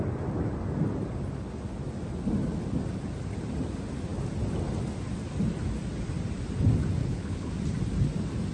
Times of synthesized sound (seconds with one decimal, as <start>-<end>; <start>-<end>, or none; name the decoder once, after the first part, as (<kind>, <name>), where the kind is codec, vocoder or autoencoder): 7.0-7.5 (codec, HILCodec)